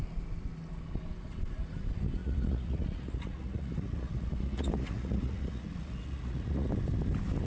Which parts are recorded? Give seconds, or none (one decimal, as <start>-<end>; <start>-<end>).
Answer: 0.0-2.2; 6.7-7.5